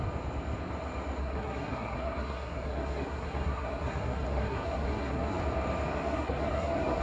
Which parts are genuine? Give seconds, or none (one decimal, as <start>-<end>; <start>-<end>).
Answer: 0.0-1.2; 5.4-5.9